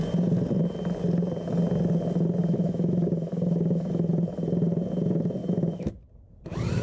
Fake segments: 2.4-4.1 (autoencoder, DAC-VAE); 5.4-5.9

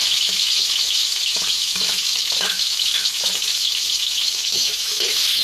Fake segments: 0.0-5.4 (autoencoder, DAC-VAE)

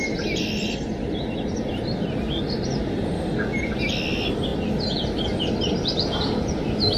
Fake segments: none

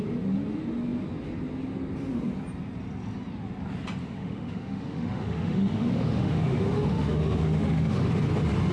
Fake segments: 4.0-8.1 (autoencoder, DAC-VAE)

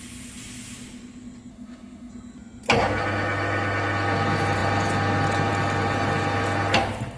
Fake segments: 1.5-2.1 (autoencoder, DAC-VAE)